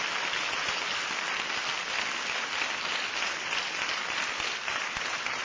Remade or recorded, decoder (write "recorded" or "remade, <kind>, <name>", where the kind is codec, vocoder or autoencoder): recorded